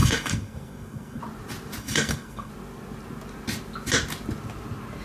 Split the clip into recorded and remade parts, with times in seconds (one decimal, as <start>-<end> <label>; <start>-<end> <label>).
0.0-1.2 remade; 1.2-1.8 recorded; 1.8-2.5 remade; 2.5-5.0 recorded